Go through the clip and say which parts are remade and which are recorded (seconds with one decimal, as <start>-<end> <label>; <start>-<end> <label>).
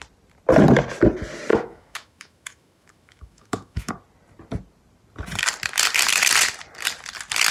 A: 0.0-1.5 recorded; 1.5-3.9 remade; 3.9-7.5 recorded